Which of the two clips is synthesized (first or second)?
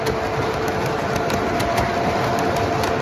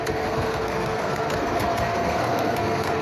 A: second